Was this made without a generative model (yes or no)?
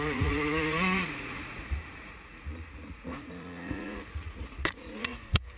no